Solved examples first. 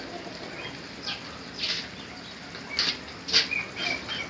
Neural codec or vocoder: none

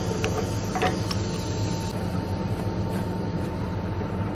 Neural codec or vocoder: none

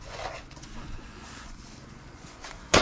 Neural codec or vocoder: vocoder, Vocos